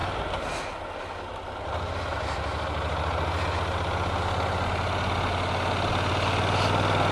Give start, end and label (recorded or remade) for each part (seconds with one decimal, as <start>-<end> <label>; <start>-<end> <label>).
0.0-7.1 recorded